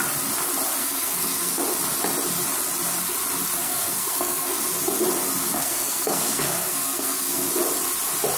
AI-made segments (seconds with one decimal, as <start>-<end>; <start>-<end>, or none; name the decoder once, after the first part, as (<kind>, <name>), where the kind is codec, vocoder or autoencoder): 0.8-1.6 (codec, SNAC); 3.6-4.6; 5.4-7.5